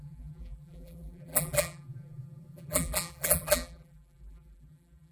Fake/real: fake